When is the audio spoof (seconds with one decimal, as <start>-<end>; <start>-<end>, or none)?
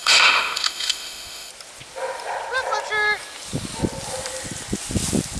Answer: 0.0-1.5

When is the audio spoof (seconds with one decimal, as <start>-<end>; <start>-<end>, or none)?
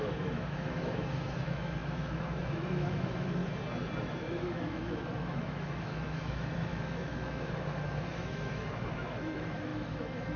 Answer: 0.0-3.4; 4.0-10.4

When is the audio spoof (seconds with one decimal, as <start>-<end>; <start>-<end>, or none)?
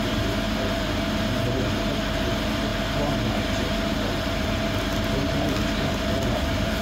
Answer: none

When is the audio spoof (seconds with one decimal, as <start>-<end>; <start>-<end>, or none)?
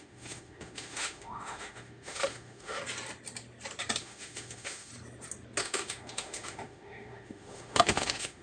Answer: 0.0-2.8; 4.0-4.9; 5.6-8.4